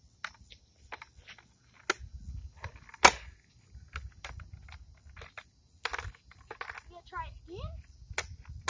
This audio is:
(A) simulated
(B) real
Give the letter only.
B